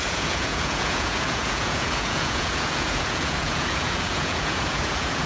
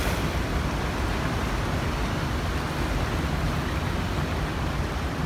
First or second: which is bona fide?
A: second